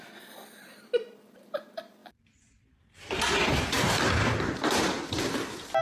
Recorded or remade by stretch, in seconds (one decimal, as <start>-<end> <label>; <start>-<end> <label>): 0.0-5.8 remade